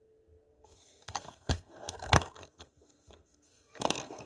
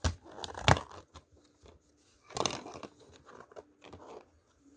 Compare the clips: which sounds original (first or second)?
second